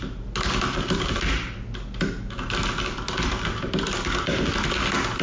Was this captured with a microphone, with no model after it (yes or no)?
yes